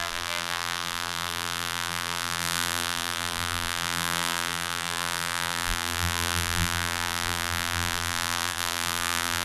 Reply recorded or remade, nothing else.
remade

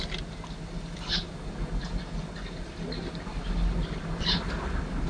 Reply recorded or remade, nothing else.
recorded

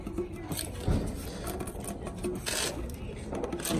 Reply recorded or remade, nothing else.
recorded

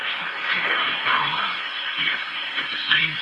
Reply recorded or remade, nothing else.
remade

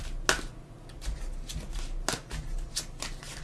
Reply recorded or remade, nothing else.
recorded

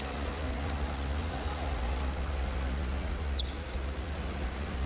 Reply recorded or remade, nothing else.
remade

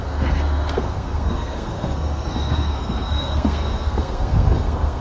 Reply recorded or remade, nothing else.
remade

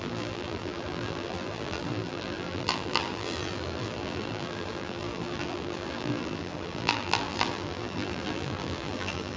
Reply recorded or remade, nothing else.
remade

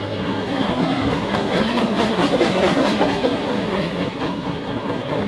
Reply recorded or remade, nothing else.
remade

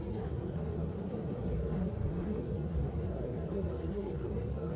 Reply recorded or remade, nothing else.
remade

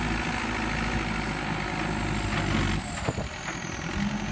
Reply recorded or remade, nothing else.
recorded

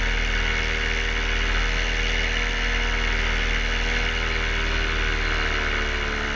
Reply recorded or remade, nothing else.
recorded